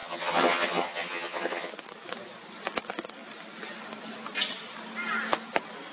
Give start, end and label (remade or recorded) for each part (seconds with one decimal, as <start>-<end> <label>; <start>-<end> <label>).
0.0-1.7 remade; 1.7-5.9 recorded